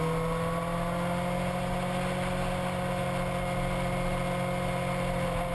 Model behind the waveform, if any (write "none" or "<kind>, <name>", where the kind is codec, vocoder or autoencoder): none